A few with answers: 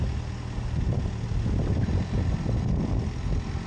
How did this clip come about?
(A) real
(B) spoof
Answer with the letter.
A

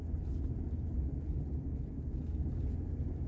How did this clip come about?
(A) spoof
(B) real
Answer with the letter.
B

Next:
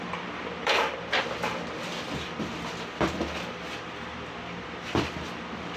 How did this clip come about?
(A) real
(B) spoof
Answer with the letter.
B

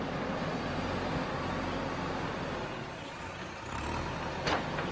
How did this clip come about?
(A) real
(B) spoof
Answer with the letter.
A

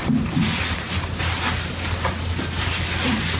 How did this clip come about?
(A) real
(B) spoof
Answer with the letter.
A